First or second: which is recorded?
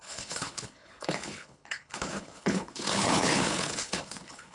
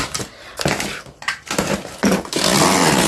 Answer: second